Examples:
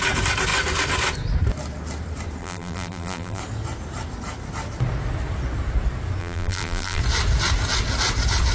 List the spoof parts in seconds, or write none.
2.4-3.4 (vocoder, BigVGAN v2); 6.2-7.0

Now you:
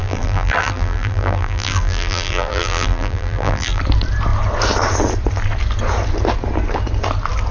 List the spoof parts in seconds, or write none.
0.0-3.8 (vocoder, BigVGAN v2)